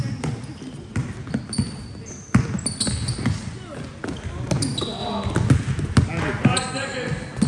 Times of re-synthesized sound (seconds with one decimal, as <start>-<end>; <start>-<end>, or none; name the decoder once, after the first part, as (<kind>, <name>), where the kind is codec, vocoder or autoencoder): none

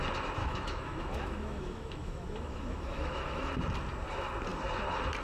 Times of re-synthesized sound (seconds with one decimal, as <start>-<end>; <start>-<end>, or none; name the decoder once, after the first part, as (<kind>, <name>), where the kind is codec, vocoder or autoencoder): 0.4-3.5 (autoencoder, DAC-VAE)